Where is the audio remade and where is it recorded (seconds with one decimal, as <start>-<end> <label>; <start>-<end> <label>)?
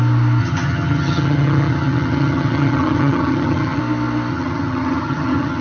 0.0-0.4 recorded; 0.4-3.8 remade; 3.8-4.3 recorded; 4.3-5.6 remade